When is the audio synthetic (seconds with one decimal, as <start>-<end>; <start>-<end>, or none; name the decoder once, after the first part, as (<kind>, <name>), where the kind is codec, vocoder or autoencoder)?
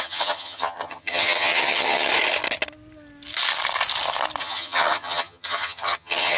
0.0-2.1 (vocoder, HiFi-GAN); 4.4-6.4